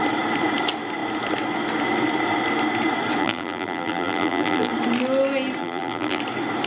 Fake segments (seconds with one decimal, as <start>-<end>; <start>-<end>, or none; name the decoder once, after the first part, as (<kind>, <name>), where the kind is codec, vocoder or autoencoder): 3.2-4.7 (vocoder, BigVGAN v2); 5.6-6.2